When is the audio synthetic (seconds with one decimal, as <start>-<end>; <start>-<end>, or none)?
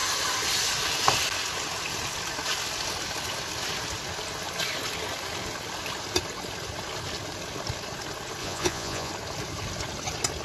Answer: 8.4-9.1